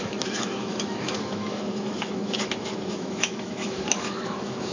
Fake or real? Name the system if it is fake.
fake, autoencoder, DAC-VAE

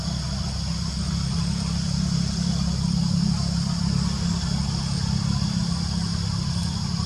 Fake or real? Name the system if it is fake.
fake, vocoder, BigVGAN v2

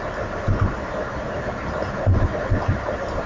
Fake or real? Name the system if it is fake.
real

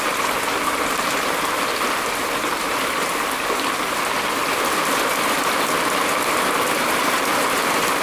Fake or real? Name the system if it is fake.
real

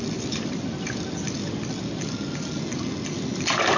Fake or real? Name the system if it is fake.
real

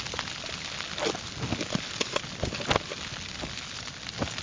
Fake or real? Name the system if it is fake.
real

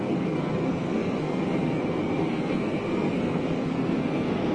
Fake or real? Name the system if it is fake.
fake, codec, SNAC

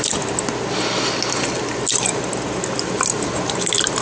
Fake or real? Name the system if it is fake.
real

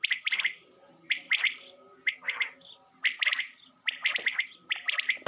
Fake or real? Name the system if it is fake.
real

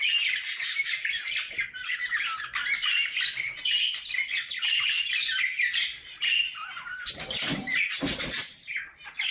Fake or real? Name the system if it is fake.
real